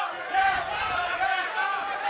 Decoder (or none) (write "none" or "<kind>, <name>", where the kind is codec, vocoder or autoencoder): none